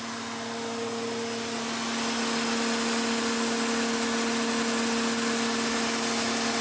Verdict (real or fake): real